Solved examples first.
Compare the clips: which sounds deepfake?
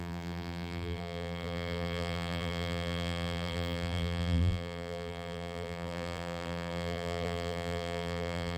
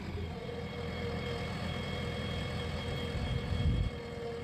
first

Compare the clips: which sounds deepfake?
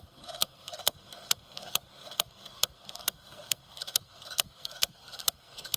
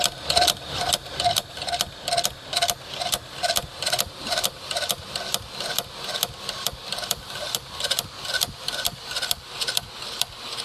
first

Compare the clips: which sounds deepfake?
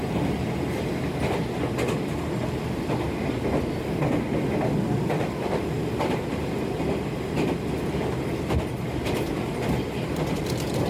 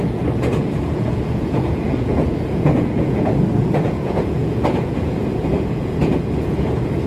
second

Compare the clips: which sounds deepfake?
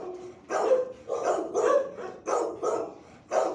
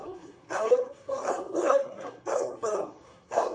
second